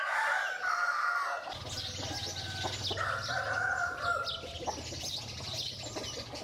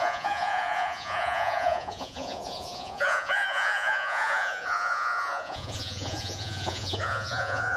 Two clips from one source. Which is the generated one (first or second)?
second